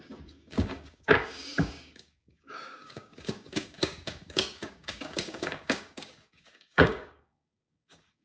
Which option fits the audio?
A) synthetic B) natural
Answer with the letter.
A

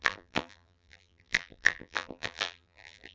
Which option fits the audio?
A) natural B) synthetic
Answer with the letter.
B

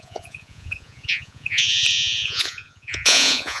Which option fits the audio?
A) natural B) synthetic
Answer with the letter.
B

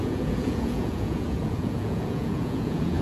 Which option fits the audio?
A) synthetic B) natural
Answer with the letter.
A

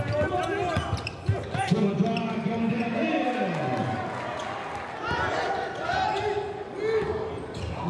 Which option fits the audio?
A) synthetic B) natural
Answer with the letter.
B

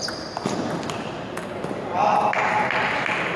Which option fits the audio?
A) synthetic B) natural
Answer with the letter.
B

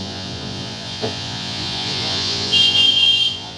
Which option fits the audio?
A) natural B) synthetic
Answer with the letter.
B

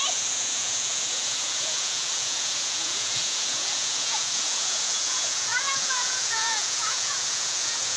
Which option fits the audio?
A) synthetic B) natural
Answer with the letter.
A